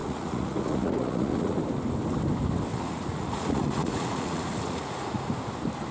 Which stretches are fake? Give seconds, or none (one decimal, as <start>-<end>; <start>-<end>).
0.0-1.6; 2.7-5.3